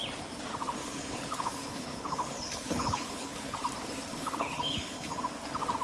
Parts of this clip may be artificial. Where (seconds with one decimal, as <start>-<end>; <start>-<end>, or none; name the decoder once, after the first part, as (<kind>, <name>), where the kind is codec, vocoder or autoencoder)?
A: 0.8-3.6 (codec, HILCodec); 4.1-5.2